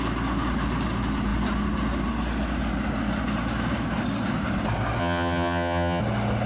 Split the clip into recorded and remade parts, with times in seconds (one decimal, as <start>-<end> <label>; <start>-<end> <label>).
0.0-5.0 recorded; 5.0-6.0 remade; 6.0-6.5 recorded